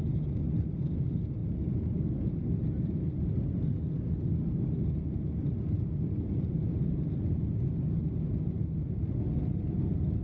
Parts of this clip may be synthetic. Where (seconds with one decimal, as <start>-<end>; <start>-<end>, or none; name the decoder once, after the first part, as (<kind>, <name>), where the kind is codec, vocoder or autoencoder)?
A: none